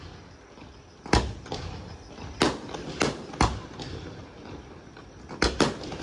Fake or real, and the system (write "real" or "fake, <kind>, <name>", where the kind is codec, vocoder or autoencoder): real